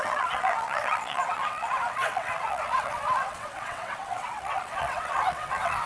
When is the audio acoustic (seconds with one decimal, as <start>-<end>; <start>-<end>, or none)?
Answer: none